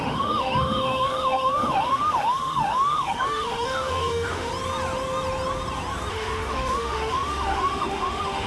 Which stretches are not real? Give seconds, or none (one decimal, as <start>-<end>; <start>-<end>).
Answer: 0.0-4.5; 6.1-8.5

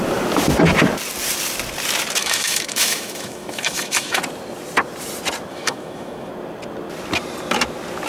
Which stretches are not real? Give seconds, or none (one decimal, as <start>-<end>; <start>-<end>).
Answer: 2.2-4.2; 5.5-6.3

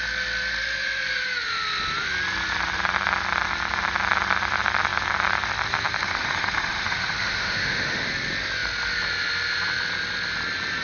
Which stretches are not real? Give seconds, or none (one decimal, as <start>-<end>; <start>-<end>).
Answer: 6.0-8.1

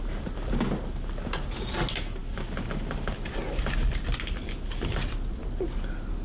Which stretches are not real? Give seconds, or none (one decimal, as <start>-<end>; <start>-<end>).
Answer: none

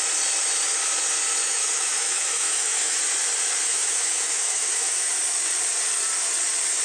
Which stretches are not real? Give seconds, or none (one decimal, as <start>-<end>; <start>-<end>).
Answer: 1.4-3.0; 3.7-5.1

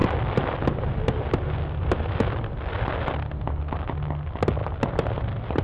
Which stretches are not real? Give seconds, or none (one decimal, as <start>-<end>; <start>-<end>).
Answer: none